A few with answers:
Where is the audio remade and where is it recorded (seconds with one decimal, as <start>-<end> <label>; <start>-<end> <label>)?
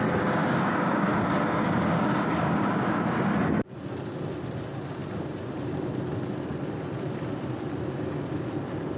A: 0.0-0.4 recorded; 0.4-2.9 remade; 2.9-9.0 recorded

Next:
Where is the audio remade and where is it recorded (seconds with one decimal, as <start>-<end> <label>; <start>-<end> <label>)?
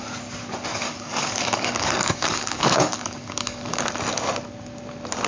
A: 0.0-0.7 recorded; 0.7-3.9 remade; 3.9-5.3 recorded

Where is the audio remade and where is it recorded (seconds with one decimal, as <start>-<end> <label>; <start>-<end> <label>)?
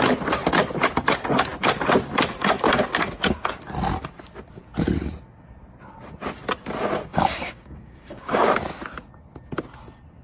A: 0.0-7.1 recorded; 7.1-8.5 remade; 8.5-10.2 recorded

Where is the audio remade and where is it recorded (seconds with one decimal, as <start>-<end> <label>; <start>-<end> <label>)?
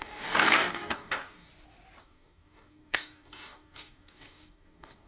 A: 0.0-1.5 remade; 1.5-2.0 recorded; 2.0-5.1 remade